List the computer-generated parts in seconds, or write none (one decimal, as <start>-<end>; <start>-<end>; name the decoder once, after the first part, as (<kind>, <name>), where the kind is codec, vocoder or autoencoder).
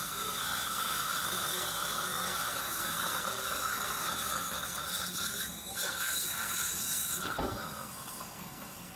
0.0-9.0 (codec, SNAC)